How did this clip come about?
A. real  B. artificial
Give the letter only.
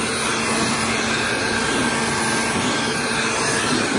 A